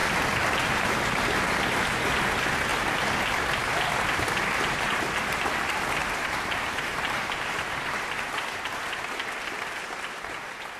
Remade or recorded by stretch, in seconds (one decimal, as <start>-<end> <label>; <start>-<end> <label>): 0.0-6.0 recorded; 6.0-8.0 remade; 8.0-10.8 recorded